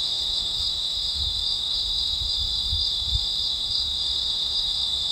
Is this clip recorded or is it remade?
remade